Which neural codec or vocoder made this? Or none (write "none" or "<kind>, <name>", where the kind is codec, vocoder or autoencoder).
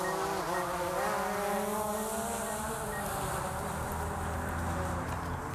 none